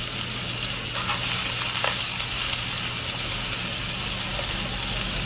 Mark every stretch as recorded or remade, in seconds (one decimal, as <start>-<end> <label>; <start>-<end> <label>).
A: 0.0-5.3 recorded

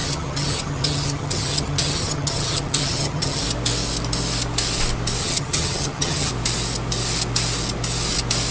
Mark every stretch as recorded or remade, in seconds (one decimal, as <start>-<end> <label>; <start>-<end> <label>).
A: 0.0-3.4 remade; 3.4-5.2 recorded; 5.2-6.3 remade; 6.3-8.5 recorded

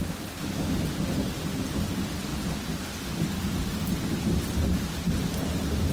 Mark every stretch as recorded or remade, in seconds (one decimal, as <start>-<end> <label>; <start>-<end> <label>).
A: 0.0-5.9 recorded

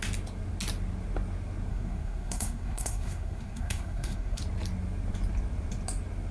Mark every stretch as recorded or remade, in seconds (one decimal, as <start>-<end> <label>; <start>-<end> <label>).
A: 0.0-1.7 recorded; 1.7-4.4 remade; 4.4-6.3 recorded

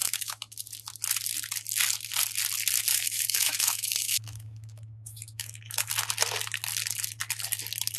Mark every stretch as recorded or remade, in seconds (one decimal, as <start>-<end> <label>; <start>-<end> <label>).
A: 0.0-0.7 remade; 0.7-2.9 recorded; 2.9-5.9 remade; 5.9-8.0 recorded